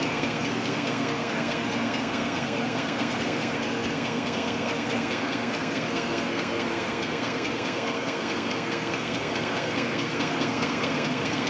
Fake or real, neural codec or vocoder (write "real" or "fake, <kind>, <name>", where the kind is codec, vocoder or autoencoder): fake, codec, SNAC